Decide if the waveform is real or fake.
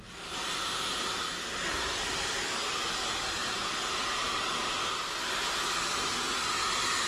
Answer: real